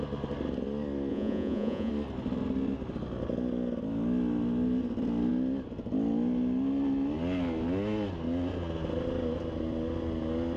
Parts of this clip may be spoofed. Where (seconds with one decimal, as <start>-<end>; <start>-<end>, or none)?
1.1-1.9